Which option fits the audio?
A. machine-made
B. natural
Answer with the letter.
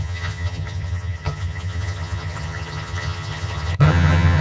A